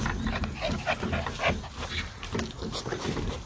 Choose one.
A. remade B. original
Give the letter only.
B